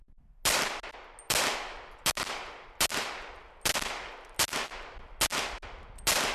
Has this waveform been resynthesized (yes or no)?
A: no